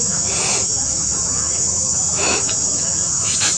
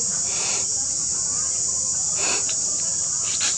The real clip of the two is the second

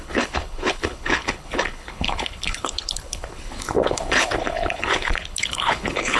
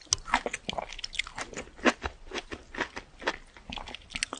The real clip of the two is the second